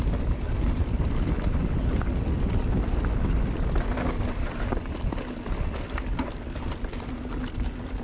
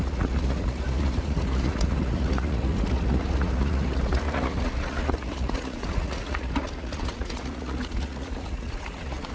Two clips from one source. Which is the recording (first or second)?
first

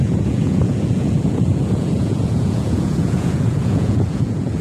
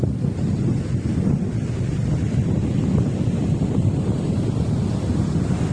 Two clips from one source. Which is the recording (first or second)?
second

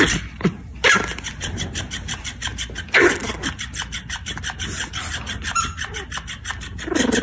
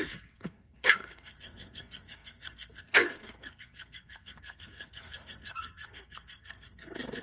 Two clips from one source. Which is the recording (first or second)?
first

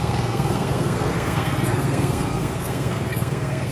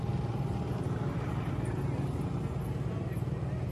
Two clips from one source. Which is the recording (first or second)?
second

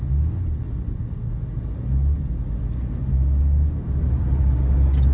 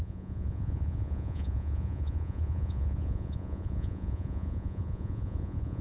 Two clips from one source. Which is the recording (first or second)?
first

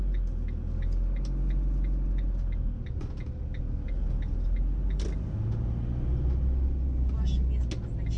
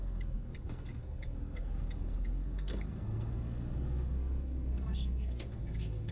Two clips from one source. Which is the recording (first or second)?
first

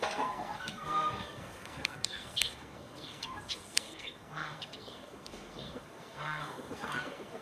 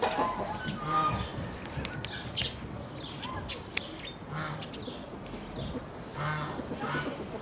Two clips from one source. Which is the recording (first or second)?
second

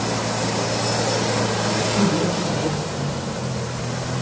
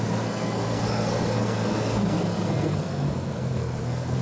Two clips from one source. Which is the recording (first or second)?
first